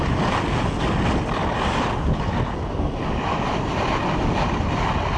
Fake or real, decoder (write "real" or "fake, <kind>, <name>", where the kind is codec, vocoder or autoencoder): real